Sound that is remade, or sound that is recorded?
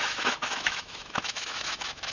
remade